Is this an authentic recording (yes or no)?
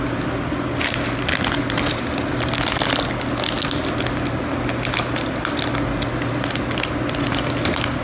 yes